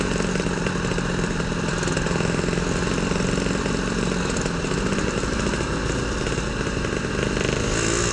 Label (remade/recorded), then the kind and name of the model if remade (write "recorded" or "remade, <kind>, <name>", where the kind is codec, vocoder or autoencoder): recorded